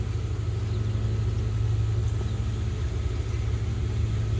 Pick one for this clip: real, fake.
real